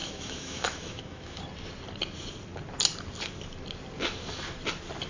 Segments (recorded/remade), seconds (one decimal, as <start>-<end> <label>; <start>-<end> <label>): 0.0-1.4 remade; 1.4-5.1 recorded

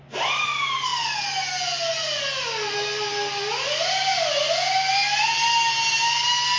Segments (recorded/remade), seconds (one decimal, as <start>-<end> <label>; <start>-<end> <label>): 0.0-6.6 recorded

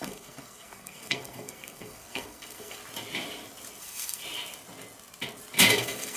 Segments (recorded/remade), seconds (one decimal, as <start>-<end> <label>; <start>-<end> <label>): 0.0-2.8 remade; 2.8-3.8 recorded; 3.8-4.2 remade; 4.2-5.7 recorded; 5.7-6.2 remade

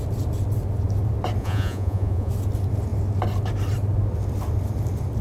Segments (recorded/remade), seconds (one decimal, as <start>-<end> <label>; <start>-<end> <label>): 0.0-1.4 recorded; 1.4-2.3 remade; 2.3-5.2 recorded

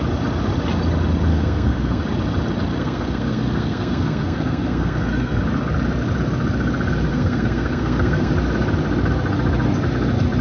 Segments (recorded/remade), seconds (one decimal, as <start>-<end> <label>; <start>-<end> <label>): 0.0-1.3 recorded; 1.3-2.0 remade; 2.0-2.8 recorded; 2.8-5.4 remade; 5.4-7.1 recorded; 7.1-8.3 remade; 8.3-10.4 recorded